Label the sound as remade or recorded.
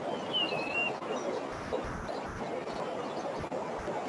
recorded